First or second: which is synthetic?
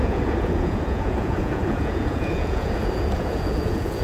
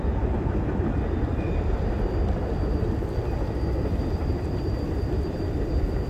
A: first